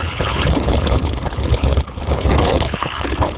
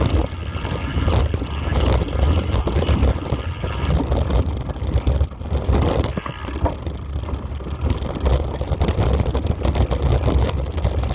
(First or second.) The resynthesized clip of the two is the first